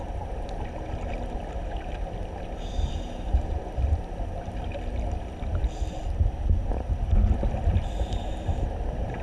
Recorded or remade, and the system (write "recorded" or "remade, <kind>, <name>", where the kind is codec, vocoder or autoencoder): recorded